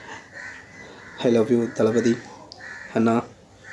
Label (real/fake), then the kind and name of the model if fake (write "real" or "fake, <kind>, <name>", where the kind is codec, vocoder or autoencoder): real